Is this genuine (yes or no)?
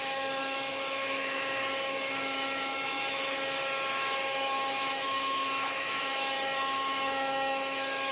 no